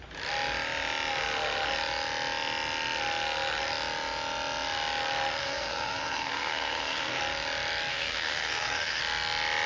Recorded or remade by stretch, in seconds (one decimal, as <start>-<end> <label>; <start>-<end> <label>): 0.0-5.4 recorded; 5.4-7.2 remade; 7.2-7.9 recorded; 7.9-9.0 remade; 9.0-9.7 recorded